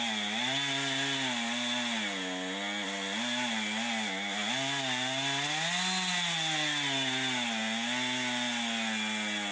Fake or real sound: real